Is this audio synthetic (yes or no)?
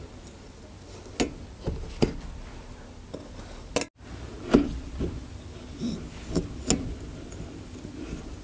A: no